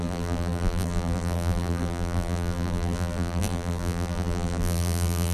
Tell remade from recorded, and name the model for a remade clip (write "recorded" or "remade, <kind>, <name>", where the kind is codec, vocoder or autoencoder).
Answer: remade, vocoder, BigVGAN v2